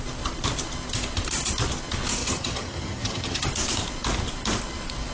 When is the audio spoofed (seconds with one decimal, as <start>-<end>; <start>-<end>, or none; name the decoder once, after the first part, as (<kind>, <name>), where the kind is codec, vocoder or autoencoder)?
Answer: 2.2-3.5 (vocoder, HiFi-GAN)